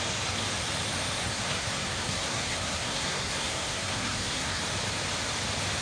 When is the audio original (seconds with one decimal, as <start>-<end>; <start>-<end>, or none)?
0.0-1.3; 4.6-5.8